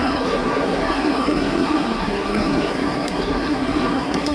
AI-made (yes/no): yes